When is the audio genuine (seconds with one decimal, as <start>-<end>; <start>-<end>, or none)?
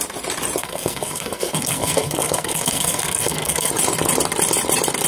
0.0-0.6; 3.7-5.1